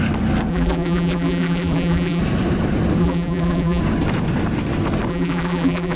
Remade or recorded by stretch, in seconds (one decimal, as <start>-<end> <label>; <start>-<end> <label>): 0.0-0.5 recorded; 0.5-2.2 remade; 2.2-3.0 recorded; 3.0-3.8 remade; 3.8-5.1 recorded; 5.1-6.0 remade